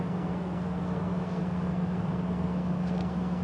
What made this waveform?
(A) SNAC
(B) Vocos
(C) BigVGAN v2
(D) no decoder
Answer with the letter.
A